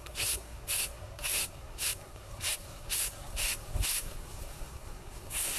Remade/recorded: remade